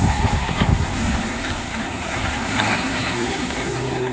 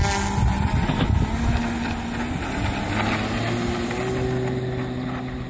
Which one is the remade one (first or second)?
first